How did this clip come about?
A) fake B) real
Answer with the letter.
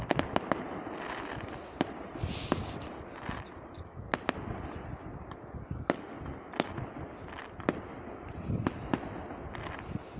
B